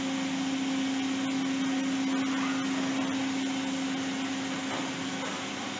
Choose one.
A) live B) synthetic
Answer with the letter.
A